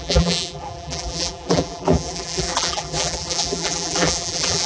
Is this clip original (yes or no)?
no